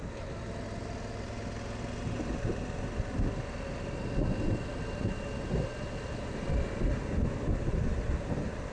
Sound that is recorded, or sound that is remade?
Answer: recorded